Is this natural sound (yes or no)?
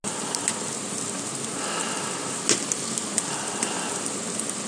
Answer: yes